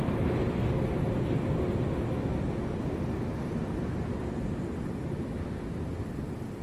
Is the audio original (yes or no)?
yes